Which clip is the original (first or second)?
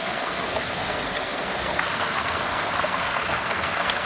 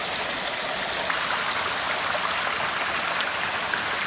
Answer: second